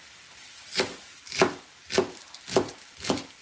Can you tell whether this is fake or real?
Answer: real